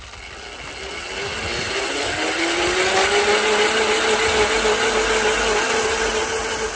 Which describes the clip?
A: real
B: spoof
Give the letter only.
A